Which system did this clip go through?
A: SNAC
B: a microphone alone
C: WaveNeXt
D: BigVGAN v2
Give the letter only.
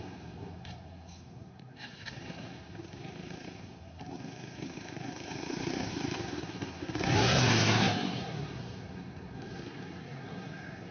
A